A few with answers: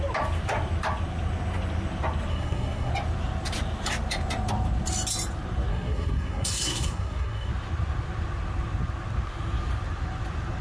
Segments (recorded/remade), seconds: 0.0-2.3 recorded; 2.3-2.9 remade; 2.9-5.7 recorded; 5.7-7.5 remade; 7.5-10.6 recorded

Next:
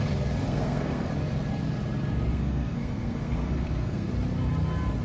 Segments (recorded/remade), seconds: 0.0-0.4 recorded; 0.4-1.1 remade; 1.1-2.3 recorded; 2.3-4.1 remade; 4.1-5.0 recorded